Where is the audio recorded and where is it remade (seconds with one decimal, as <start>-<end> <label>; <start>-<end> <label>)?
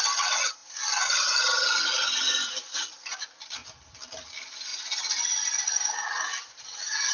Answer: 0.0-7.1 recorded